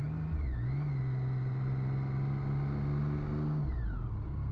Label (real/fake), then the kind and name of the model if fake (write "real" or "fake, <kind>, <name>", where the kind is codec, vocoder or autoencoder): real